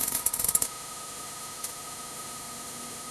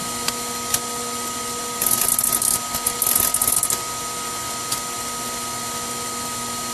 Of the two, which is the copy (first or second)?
first